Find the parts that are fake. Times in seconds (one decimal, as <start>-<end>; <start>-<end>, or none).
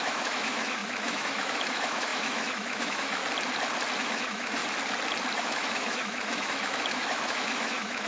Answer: 0.0-3.2; 4.0-4.6; 5.4-8.1